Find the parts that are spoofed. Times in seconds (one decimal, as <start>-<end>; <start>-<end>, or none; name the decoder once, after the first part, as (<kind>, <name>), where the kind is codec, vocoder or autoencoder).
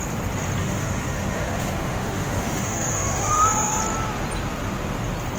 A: 0.6-3.8 (autoencoder, DAC-VAE)